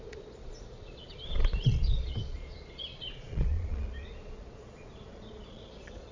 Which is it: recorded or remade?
remade